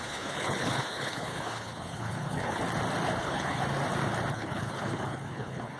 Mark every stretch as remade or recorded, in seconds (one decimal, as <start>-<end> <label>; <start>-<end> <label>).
0.0-2.6 remade; 2.6-3.2 recorded; 3.2-3.6 remade; 3.6-4.3 recorded; 4.3-5.8 remade